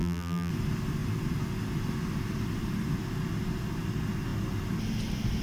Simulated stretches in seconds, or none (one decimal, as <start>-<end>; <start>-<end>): 0.0-0.5